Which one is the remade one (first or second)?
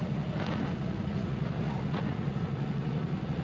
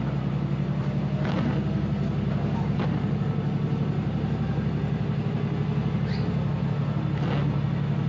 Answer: first